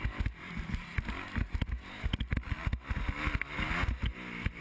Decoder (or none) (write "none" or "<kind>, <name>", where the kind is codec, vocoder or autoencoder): none